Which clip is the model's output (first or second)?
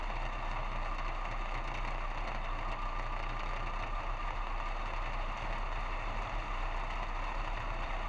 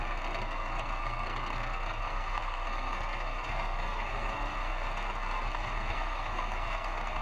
second